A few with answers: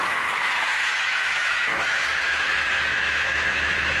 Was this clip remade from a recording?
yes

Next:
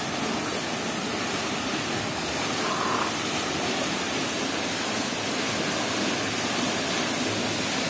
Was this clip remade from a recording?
no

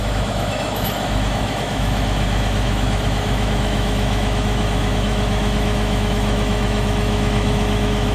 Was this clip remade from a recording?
yes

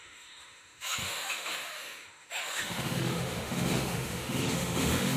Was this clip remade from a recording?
yes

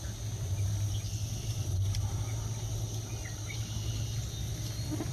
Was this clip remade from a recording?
no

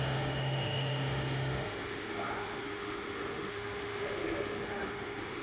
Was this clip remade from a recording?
yes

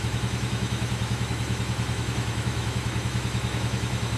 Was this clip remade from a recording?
yes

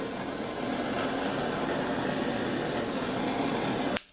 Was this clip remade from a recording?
no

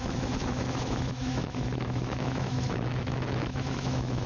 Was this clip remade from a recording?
yes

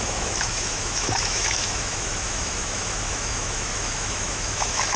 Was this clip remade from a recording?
yes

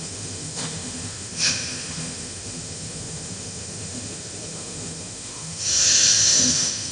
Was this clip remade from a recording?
yes